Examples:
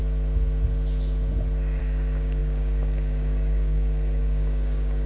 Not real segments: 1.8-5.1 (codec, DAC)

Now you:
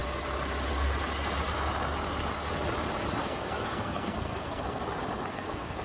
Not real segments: 3.2-4.8 (codec, SNAC); 5.3-5.8

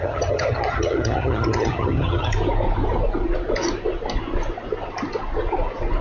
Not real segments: 0.0-2.3 (vocoder, HiFi-GAN)

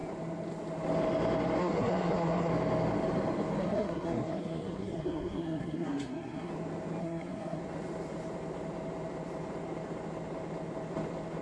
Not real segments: 1.6-2.5 (codec, SNAC); 3.6-6.5; 7.0-7.6

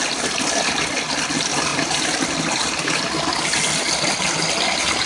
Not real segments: none